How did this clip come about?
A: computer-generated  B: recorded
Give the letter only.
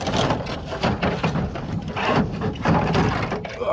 B